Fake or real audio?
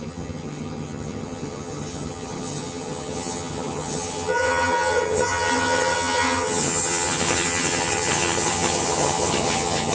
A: fake